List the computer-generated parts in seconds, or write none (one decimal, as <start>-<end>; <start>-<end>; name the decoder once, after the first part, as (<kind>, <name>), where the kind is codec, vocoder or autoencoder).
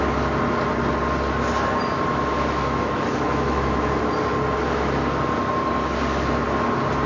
2.1-4.0 (autoencoder, DAC-VAE)